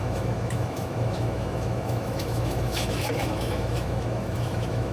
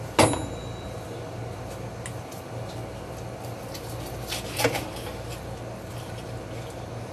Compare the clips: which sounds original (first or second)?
second